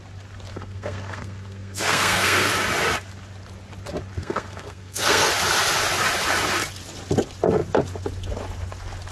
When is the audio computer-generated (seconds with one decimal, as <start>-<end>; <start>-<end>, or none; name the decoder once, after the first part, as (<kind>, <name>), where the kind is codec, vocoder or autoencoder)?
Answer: 0.5-2.5 (codec, SNAC); 4.2-5.3